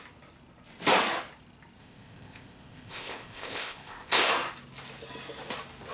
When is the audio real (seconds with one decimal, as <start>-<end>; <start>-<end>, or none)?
0.0-1.8; 4.3-5.9